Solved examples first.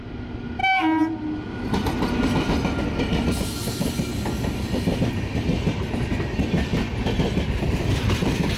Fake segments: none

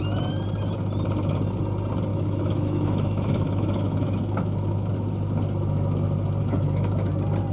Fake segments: 2.1-4.9 (autoencoder, DAC-VAE); 6.4-7.1